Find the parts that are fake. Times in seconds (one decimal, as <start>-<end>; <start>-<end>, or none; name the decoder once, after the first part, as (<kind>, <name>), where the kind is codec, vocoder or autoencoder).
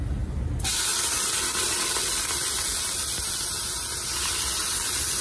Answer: none